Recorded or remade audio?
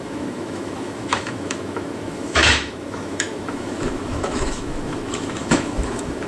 remade